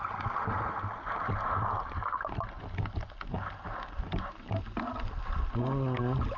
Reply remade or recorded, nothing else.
recorded